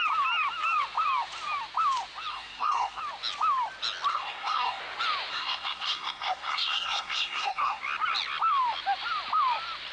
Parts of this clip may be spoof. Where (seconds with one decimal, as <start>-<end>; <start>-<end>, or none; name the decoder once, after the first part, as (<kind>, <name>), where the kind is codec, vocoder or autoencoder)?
2.3-3.0 (codec, SNAC); 4.1-4.8; 5.3-7.8